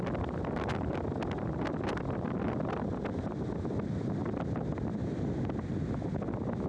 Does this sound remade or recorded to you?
recorded